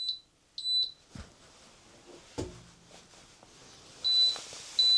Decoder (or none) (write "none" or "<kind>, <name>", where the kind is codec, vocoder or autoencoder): none